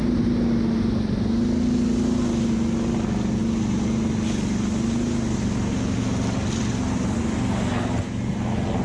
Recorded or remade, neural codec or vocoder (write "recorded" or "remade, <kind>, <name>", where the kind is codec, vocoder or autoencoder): recorded